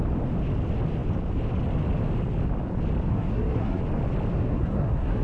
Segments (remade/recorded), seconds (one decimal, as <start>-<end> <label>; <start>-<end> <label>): 0.0-3.1 recorded; 3.1-3.8 remade; 3.8-4.4 recorded; 4.4-5.2 remade